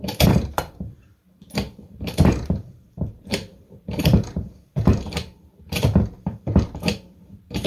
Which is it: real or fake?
fake